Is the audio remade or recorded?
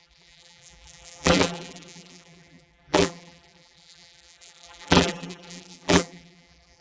remade